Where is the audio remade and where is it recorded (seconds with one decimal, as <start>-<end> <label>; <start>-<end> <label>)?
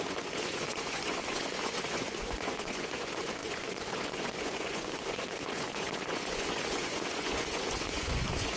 0.0-8.6 remade